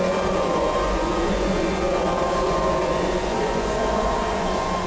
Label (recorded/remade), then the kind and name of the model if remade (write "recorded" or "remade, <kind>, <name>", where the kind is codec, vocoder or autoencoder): remade, vocoder, Vocos